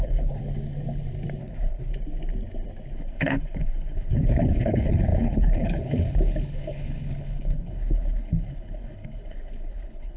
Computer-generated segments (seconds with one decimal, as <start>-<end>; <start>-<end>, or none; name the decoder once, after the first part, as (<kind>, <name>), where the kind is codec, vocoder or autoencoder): 0.0-0.4 (codec, HILCodec); 1.4-1.9; 2.9-10.2